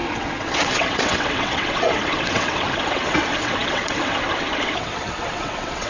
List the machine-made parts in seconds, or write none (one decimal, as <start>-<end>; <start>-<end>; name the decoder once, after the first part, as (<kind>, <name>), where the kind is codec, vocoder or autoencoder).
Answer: 0.0-5.9 (vocoder, WaveNeXt)